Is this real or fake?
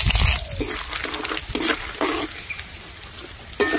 real